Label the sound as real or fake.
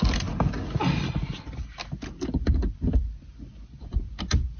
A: real